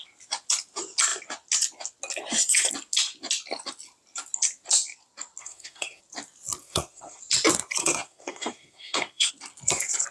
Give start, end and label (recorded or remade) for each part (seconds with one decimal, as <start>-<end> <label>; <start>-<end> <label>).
0.0-5.4 recorded; 5.4-6.0 remade; 6.0-6.6 recorded; 6.6-7.2 remade; 7.2-7.8 recorded; 7.8-9.3 remade; 9.3-10.1 recorded